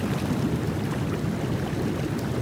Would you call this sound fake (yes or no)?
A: no